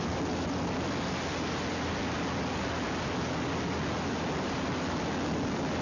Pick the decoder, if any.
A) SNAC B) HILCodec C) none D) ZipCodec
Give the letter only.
C